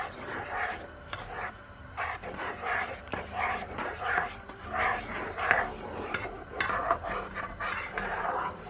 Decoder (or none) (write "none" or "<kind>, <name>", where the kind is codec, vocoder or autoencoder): vocoder, BigVGAN v2